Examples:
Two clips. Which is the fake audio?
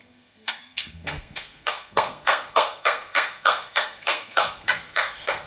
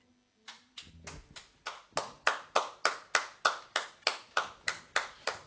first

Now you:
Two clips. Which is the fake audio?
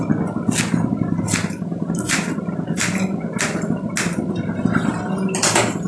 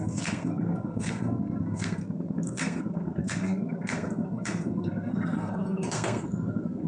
second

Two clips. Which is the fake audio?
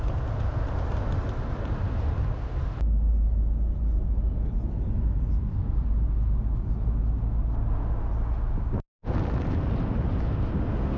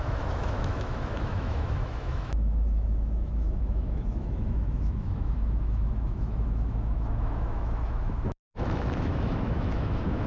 second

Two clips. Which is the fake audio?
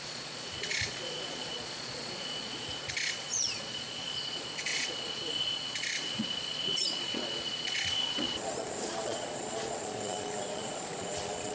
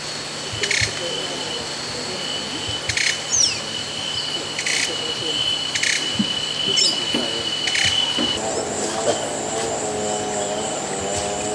first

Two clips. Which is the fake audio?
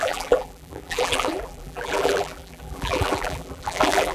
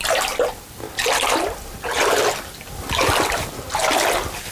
first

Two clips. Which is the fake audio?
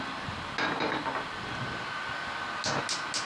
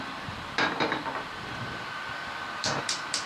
second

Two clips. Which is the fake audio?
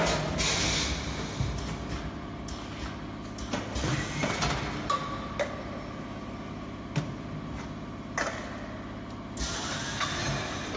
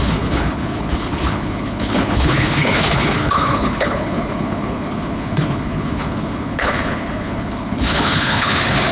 second